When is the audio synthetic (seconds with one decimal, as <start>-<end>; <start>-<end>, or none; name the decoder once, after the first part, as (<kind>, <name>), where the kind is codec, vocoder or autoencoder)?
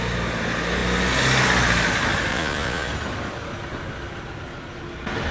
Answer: 2.3-2.9 (vocoder, Vocos)